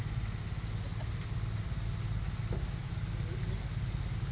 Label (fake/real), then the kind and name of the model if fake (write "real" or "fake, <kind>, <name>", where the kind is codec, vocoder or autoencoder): real